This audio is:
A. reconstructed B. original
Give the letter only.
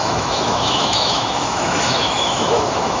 A